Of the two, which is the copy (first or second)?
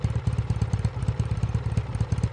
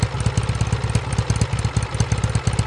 first